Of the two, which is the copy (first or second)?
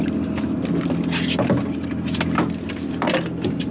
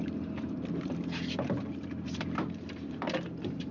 second